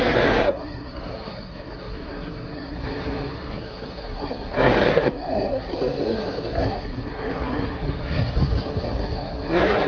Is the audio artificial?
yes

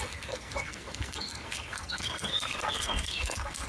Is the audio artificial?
yes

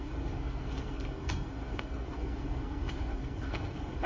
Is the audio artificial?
yes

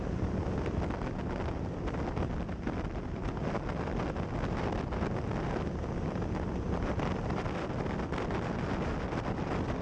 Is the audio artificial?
no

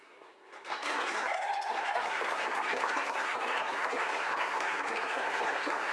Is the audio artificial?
yes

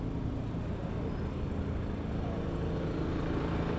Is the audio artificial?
no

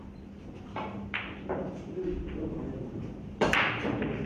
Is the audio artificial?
no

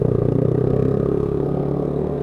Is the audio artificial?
yes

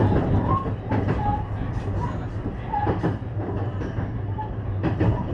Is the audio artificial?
no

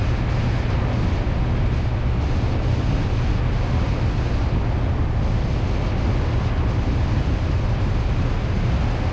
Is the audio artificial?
no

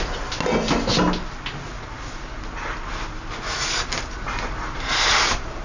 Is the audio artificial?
no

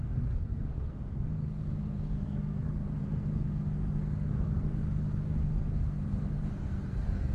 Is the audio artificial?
yes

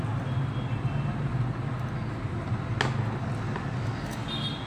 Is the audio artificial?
no